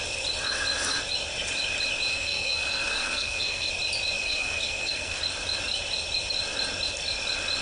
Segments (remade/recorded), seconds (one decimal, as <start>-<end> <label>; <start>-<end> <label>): 0.0-2.1 recorded; 2.1-3.7 remade; 3.7-4.2 recorded; 4.2-5.2 remade; 5.2-7.6 recorded